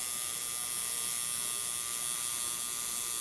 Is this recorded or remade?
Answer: recorded